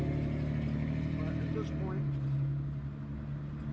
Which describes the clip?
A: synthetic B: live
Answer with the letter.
B